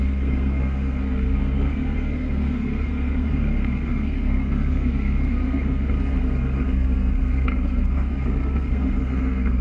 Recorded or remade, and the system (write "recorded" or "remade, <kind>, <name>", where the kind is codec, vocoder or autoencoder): remade, codec, SNAC